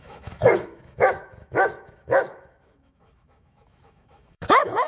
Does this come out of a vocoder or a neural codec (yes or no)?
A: yes